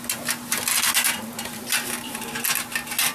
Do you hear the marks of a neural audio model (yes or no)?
no